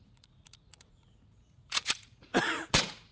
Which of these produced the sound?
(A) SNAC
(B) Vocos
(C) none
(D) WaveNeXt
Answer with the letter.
B